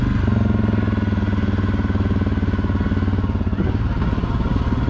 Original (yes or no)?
yes